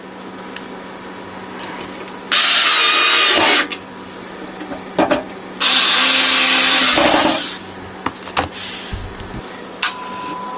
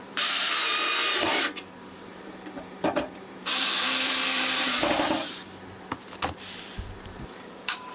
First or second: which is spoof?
second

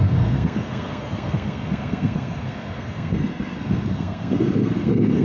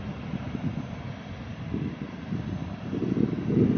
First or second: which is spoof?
first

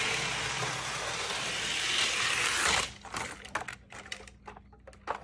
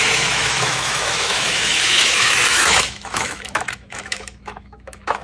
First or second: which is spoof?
second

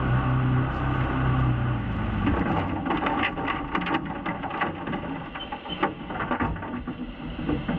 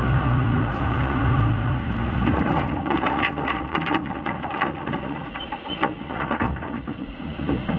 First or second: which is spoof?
second